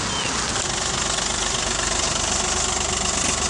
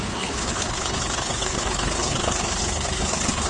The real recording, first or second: first